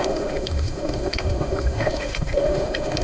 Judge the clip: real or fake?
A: fake